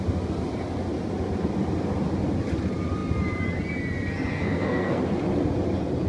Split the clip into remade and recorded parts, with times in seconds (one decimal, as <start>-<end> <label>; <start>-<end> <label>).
0.0-4.3 recorded; 4.3-5.0 remade; 5.0-6.1 recorded